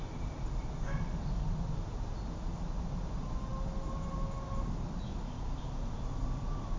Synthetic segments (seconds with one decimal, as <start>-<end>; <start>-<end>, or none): none